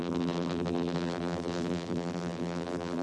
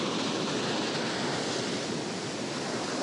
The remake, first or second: first